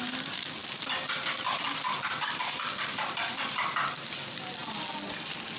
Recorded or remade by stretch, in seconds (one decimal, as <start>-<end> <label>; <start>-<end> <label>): 0.0-5.6 recorded